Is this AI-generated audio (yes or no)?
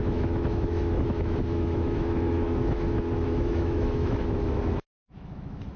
yes